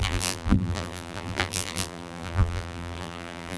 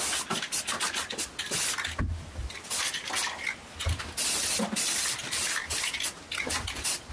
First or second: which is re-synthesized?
first